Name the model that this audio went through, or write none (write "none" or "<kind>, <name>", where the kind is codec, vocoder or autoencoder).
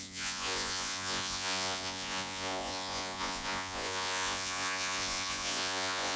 vocoder, Vocos